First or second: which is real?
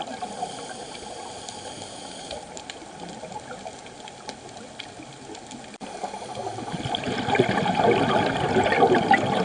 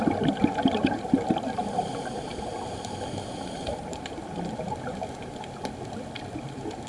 first